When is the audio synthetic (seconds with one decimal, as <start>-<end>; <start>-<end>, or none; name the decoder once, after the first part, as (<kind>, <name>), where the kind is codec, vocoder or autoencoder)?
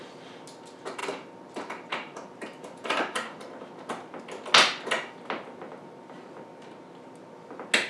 1.0-3.4 (vocoder, BigVGAN v2)